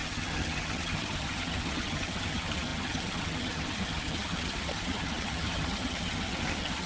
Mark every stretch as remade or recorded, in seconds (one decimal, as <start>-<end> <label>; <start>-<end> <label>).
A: 0.0-6.9 remade